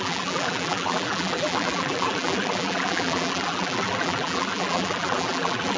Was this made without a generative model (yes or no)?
no